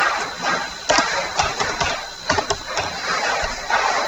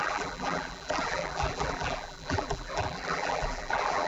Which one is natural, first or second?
first